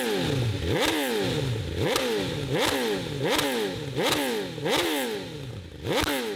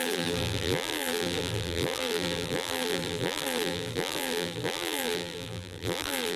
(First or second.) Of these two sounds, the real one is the first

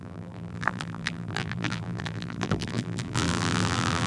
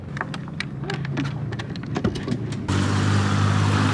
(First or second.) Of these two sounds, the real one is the second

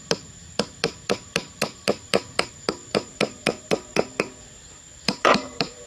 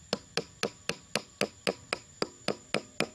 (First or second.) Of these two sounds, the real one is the second